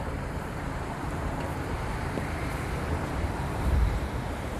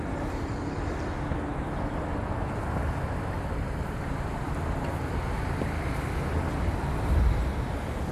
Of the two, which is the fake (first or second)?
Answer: first